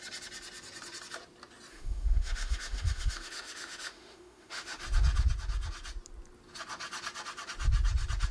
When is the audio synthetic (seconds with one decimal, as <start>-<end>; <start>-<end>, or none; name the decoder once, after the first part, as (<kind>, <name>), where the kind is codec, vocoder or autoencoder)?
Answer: 1.7-4.8 (autoencoder, DAC-VAE)